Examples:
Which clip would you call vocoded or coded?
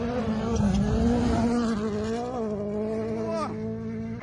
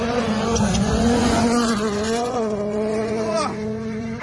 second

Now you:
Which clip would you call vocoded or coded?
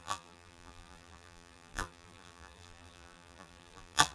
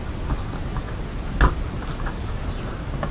first